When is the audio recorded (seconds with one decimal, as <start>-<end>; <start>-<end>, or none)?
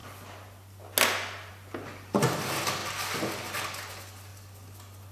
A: 0.0-5.1